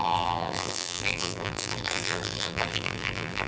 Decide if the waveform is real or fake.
fake